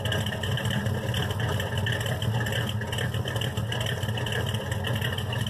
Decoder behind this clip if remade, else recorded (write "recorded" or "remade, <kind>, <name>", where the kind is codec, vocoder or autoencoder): recorded